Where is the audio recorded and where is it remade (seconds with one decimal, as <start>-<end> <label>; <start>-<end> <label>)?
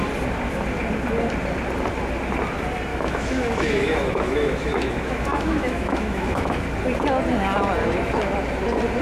0.0-2.9 recorded; 2.9-6.6 remade; 6.6-9.0 recorded